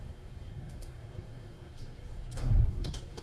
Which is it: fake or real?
fake